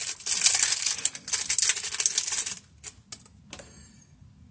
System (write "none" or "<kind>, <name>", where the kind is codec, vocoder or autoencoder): none